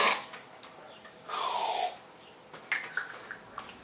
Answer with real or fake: real